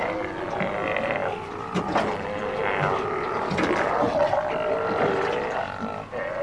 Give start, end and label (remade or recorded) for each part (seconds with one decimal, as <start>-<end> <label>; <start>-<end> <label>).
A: 0.0-6.4 recorded